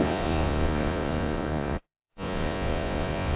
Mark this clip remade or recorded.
remade